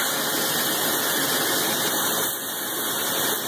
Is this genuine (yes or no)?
yes